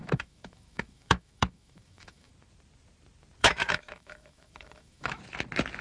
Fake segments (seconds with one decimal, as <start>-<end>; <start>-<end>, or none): 0.0-2.3; 3.4-5.2